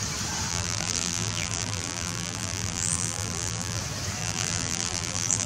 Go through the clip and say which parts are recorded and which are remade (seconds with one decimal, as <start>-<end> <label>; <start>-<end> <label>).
0.0-0.5 recorded; 0.5-3.8 remade; 3.8-4.2 recorded; 4.2-5.5 remade